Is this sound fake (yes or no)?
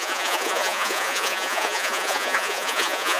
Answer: yes